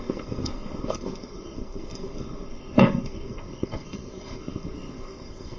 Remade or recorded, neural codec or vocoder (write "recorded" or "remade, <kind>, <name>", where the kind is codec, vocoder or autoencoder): remade, codec, SNAC